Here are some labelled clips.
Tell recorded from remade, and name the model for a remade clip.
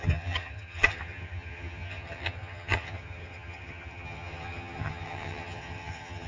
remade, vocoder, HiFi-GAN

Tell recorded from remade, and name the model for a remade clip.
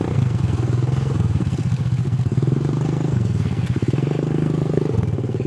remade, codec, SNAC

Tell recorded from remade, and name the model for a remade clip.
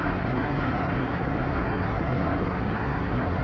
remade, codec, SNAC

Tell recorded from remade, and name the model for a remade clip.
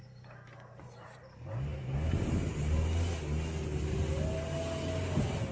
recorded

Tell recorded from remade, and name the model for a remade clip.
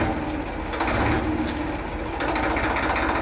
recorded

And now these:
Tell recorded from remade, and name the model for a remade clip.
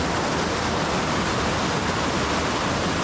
recorded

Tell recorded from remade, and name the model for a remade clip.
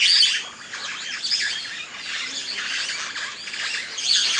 recorded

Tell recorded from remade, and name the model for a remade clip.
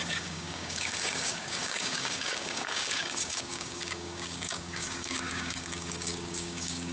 remade, codec, DAC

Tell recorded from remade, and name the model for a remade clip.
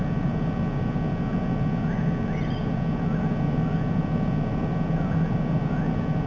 recorded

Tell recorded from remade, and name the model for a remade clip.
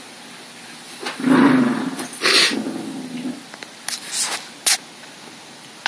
recorded